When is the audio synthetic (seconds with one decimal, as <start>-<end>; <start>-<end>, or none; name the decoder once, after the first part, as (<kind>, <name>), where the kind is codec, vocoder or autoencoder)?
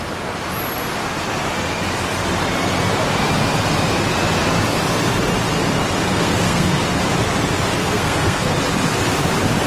6.1-6.8 (codec, SNAC); 7.8-8.5